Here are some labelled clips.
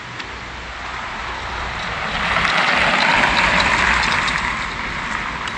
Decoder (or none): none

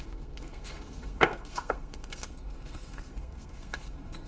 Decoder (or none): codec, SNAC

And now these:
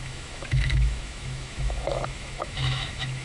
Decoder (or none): autoencoder, DAC-VAE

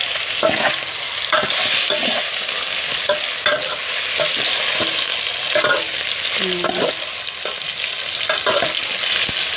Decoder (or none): none